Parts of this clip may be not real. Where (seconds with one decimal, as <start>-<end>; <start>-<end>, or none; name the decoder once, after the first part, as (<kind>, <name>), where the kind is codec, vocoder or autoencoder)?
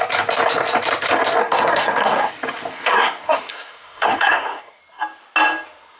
1.4-2.3 (codec, SNAC); 2.7-4.8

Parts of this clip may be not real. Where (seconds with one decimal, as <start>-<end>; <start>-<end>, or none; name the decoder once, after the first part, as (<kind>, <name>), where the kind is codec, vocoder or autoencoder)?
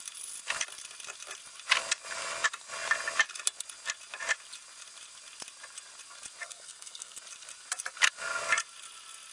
6.4-7.2 (codec, SNAC)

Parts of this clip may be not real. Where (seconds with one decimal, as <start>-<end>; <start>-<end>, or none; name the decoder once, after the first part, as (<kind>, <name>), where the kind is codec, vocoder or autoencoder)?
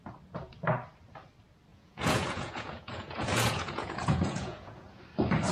1.7-5.0 (vocoder, Vocos)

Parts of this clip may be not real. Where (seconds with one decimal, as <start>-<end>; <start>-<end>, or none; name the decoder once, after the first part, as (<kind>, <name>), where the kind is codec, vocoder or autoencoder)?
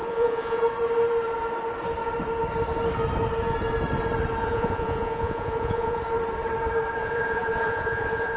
0.0-0.6 (vocoder, Vocos); 4.4-6.0; 7.0-8.4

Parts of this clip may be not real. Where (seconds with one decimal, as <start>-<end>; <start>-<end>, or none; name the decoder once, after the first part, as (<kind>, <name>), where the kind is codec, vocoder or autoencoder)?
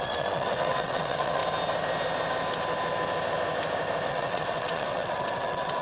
0.0-1.4 (vocoder, WaveNeXt); 4.1-5.8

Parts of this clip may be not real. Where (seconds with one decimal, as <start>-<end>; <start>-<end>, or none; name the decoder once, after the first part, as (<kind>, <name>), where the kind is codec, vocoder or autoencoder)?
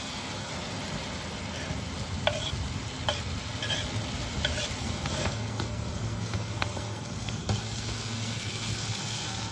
0.0-0.5 (codec, SNAC); 4.8-9.5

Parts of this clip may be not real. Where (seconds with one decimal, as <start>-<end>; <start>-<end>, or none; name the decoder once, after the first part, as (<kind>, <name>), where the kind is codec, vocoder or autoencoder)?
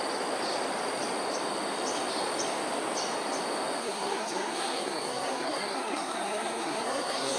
3.8-7.4 (codec, SNAC)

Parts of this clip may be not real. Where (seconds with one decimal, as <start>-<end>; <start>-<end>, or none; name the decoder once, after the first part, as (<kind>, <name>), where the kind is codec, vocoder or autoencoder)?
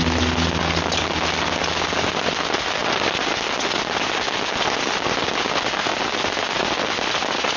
none